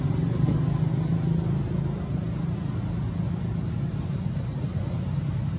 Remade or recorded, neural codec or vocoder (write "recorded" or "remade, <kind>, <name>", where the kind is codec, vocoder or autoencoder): recorded